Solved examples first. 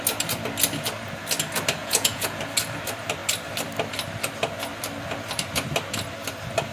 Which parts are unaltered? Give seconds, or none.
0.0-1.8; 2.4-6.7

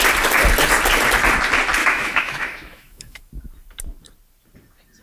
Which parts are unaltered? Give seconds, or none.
0.0-1.8; 3.2-5.0

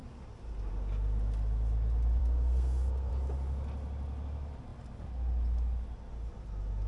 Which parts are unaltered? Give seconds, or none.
0.0-2.2; 3.1-6.9